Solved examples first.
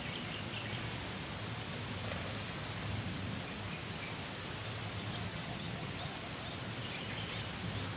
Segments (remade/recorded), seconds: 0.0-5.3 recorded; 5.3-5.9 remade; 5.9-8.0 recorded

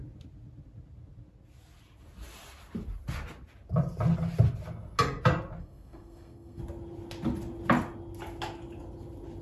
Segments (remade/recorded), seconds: 0.0-5.6 recorded; 5.6-6.6 remade; 6.6-9.4 recorded

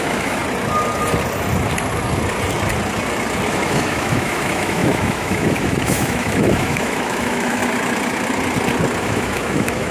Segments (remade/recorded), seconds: 0.0-0.4 remade; 0.4-3.5 recorded; 3.5-7.6 remade; 7.6-9.0 recorded; 9.0-9.9 remade

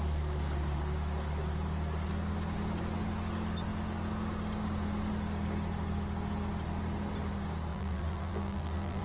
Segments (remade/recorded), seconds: 0.0-7.7 recorded; 7.7-9.0 remade

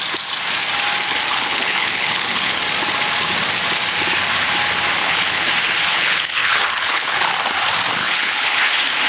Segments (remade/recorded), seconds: 0.0-1.3 recorded; 1.3-2.6 remade; 2.6-5.0 recorded; 5.0-5.5 remade; 5.5-5.9 recorded; 5.9-7.3 remade; 7.3-8.0 recorded; 8.0-8.6 remade; 8.6-9.1 recorded

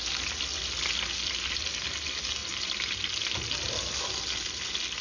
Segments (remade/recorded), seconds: 0.0-5.0 recorded

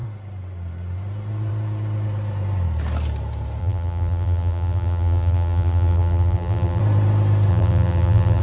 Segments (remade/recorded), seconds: 0.0-3.6 recorded; 3.6-6.8 remade; 6.8-7.5 recorded; 7.5-8.4 remade